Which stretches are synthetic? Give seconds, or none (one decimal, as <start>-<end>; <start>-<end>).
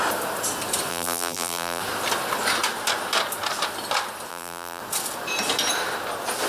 0.9-1.8; 4.3-4.8